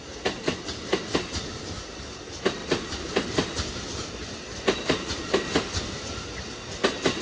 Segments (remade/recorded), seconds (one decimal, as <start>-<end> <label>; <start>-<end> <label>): 0.0-7.2 recorded